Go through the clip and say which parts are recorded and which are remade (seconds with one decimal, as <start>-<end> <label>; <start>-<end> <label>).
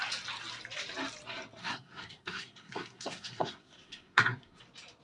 0.0-1.6 recorded; 1.6-4.6 remade; 4.6-5.0 recorded